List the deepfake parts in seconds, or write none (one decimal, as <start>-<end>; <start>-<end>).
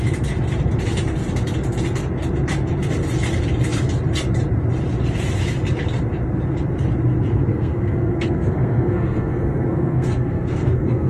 7.5-11.1